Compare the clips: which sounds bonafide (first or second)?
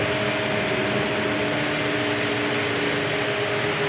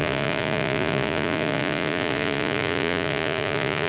first